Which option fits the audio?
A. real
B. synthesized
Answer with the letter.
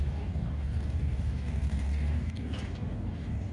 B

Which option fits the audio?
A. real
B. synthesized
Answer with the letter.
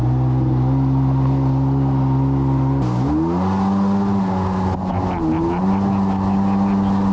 A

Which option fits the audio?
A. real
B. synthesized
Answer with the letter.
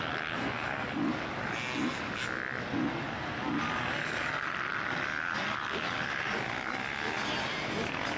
A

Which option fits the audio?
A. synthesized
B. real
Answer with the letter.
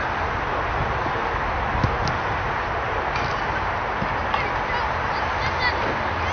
B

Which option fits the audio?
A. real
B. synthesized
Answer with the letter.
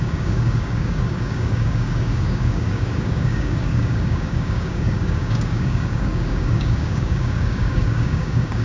B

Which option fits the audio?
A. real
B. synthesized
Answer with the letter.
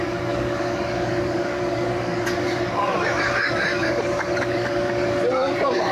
B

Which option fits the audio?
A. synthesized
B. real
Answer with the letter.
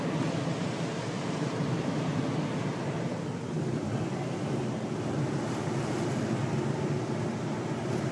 B